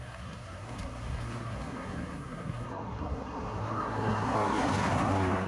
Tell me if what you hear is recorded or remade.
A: remade